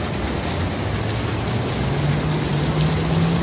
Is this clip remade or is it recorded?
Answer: recorded